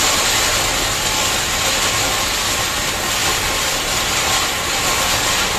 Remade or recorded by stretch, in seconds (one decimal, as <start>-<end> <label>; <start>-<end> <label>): 0.0-3.2 recorded; 3.2-5.1 remade; 5.1-5.6 recorded